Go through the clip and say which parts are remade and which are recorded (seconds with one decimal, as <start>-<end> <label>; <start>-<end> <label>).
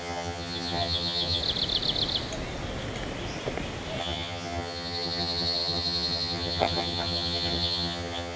0.0-1.4 remade; 1.4-4.0 recorded; 4.0-8.4 remade